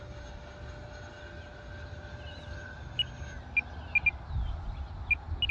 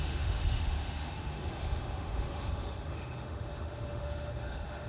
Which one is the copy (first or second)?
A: second